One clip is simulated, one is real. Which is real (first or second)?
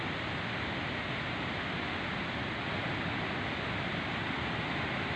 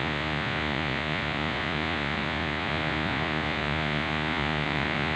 first